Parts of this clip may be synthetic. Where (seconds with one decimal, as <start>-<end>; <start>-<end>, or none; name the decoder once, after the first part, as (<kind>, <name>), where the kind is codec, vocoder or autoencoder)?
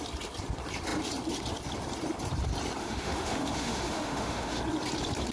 2.8-4.6 (autoencoder, DAC-VAE)